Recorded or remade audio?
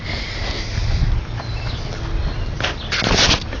recorded